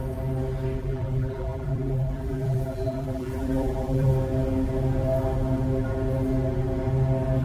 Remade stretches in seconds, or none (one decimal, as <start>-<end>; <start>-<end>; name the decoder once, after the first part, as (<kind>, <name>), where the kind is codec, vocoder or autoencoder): 0.8-4.1 (vocoder, BigVGAN v2)